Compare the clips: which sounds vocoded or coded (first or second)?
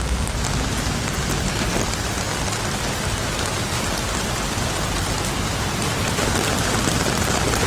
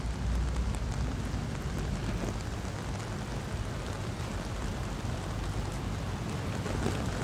first